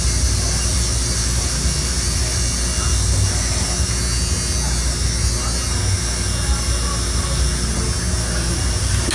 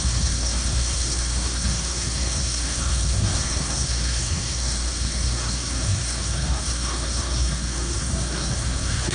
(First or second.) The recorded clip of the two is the first